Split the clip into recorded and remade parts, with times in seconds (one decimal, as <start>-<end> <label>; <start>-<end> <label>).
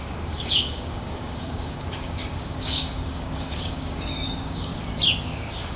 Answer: 0.0-4.7 remade; 4.7-5.2 recorded; 5.2-5.8 remade